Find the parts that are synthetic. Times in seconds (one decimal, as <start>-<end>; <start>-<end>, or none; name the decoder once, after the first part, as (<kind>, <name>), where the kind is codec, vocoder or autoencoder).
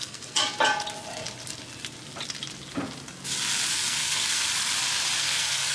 0.0-0.4 (codec, SNAC); 3.7-4.5; 5.2-5.7